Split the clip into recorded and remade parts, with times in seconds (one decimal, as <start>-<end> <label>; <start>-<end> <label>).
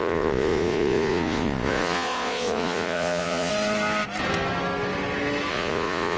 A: 0.0-3.5 remade; 3.5-5.5 recorded; 5.5-6.2 remade